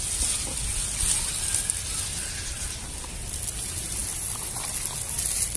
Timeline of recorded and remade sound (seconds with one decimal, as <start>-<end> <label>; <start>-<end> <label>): 0.0-5.6 recorded